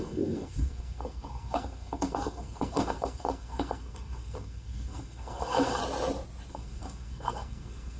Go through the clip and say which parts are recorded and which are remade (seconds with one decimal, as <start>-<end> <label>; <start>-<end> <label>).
0.0-5.8 remade; 5.8-6.5 recorded; 6.5-8.0 remade

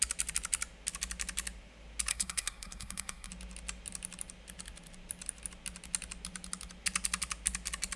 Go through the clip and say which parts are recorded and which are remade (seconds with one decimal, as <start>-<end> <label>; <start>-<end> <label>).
0.0-2.1 recorded; 2.1-3.3 remade; 3.3-8.0 recorded

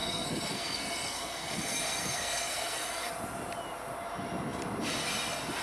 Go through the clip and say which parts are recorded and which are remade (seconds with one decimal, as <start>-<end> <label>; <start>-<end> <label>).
0.0-3.1 remade; 3.1-5.6 recorded

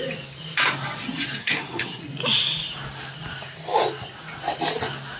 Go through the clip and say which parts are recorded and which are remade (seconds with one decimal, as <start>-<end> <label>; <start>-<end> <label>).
0.0-1.4 recorded; 1.4-2.0 remade; 2.0-5.2 recorded

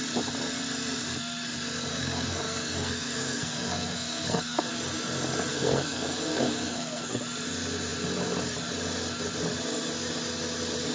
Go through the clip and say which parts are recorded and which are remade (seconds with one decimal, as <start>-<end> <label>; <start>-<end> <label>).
0.0-1.9 recorded; 1.9-4.7 remade; 4.7-5.5 recorded; 5.5-7.2 remade; 7.2-10.9 recorded

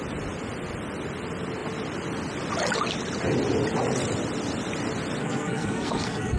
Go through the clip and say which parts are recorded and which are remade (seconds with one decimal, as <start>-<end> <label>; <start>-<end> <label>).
0.0-5.2 recorded; 5.2-6.4 remade